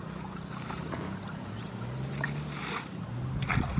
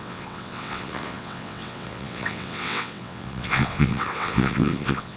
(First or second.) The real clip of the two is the first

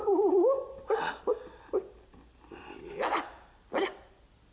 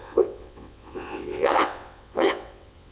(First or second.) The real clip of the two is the first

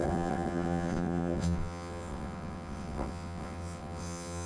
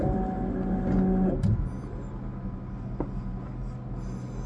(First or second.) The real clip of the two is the second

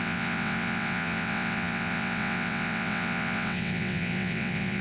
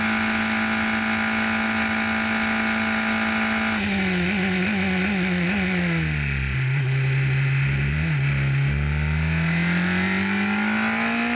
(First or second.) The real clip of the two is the second